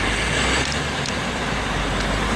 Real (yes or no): yes